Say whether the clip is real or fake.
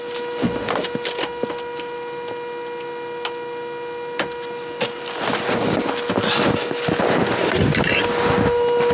real